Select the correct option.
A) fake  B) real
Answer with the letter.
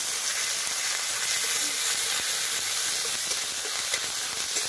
B